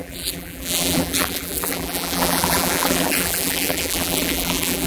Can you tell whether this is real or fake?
fake